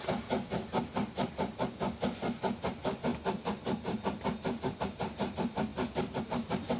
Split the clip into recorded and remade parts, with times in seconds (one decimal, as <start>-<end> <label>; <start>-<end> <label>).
0.0-6.8 recorded